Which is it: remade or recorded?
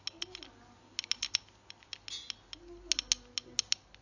recorded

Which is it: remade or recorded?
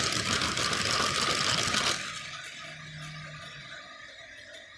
recorded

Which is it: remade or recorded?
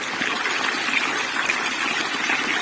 recorded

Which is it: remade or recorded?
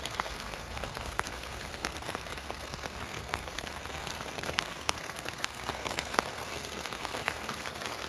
remade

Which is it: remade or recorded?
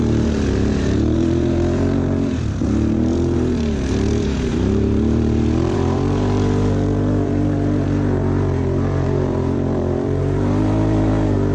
remade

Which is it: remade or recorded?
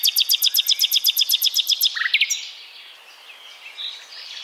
recorded